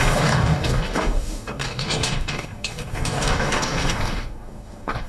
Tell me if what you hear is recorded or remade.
remade